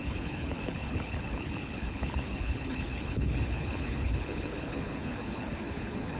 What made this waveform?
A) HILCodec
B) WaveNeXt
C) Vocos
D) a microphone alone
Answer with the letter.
A